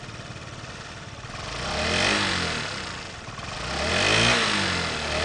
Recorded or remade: recorded